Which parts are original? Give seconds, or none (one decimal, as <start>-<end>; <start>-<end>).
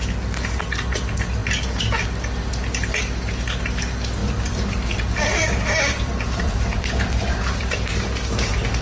0.0-4.2; 7.9-8.8